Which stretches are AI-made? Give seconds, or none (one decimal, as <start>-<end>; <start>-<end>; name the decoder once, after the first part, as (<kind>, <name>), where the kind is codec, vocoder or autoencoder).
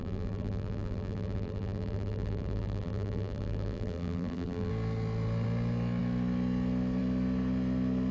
0.0-4.7 (vocoder, BigVGAN v2)